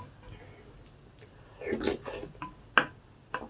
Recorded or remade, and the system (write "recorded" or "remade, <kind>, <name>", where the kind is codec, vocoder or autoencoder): recorded